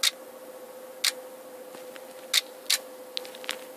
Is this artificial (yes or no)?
no